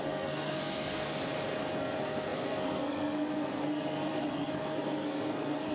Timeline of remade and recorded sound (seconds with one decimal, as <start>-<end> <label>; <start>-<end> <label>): 0.0-1.1 remade; 1.1-1.8 recorded; 1.8-5.7 remade